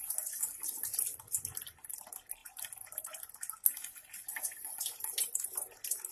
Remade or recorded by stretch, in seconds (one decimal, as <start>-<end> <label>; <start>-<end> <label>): 0.0-2.4 recorded; 2.4-3.3 remade; 3.3-4.3 recorded; 4.3-4.9 remade; 4.9-6.1 recorded